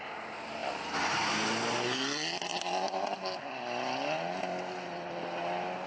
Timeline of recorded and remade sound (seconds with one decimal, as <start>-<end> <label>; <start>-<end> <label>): 0.0-2.5 recorded; 2.5-3.5 remade; 3.5-5.9 recorded